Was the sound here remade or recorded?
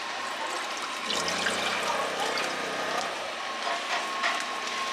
recorded